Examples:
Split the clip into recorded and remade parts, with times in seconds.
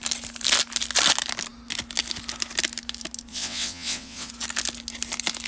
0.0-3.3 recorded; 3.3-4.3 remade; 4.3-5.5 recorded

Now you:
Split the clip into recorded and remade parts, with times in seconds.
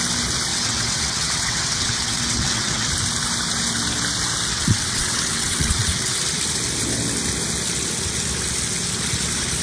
0.0-0.5 recorded; 0.5-2.9 remade; 2.9-4.5 recorded; 4.5-6.2 remade; 6.2-9.6 recorded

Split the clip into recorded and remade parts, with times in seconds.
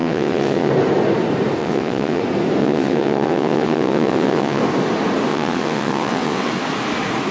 0.0-0.7 remade; 0.7-1.6 recorded; 1.6-2.2 remade; 2.2-2.6 recorded; 2.6-4.6 remade; 4.6-5.3 recorded; 5.3-6.5 remade; 6.5-7.3 recorded